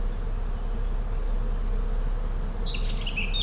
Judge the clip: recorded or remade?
recorded